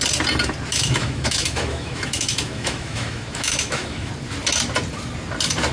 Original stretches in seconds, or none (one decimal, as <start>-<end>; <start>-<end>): 0.0-0.7; 4.1-5.7